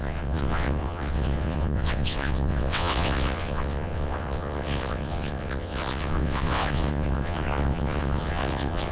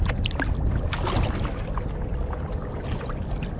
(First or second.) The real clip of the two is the second